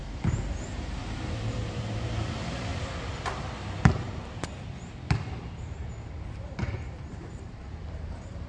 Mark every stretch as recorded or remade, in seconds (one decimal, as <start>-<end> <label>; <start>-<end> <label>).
0.0-2.7 remade; 2.7-7.3 recorded; 7.3-8.5 remade

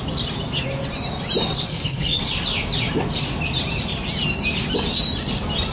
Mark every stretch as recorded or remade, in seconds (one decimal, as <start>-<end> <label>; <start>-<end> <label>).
0.0-1.7 recorded; 1.7-2.2 remade; 2.2-5.7 recorded

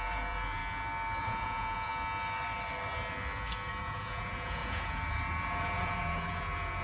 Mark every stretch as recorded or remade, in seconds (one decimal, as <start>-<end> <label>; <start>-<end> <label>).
0.0-0.6 remade; 0.6-1.2 recorded; 1.2-1.9 remade; 1.9-3.8 recorded; 3.8-6.8 remade